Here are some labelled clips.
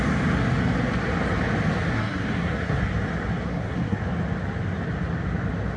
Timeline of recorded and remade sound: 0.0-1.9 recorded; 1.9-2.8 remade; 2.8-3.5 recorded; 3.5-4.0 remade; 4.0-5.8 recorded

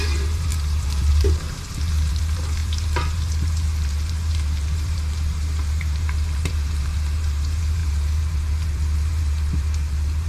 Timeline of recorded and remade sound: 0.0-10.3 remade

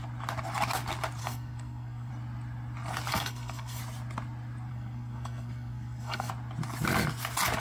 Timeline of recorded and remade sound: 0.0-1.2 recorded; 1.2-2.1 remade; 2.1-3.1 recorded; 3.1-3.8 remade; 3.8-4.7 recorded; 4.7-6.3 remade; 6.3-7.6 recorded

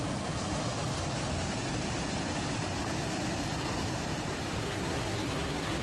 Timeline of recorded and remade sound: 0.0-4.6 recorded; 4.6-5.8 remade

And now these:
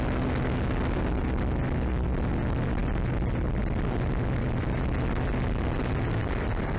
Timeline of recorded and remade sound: 0.0-6.8 recorded

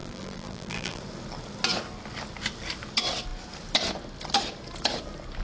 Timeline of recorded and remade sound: 0.0-1.0 remade; 1.0-5.4 recorded

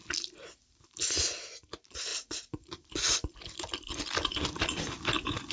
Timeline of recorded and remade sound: 0.0-1.2 remade; 1.2-2.1 recorded; 2.1-5.5 remade

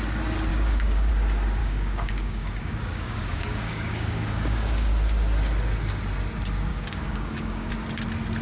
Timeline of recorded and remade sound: 0.0-0.5 recorded; 0.5-1.1 remade; 1.1-1.6 recorded; 1.6-4.9 remade; 4.9-6.7 recorded; 6.7-7.7 remade; 7.7-8.4 recorded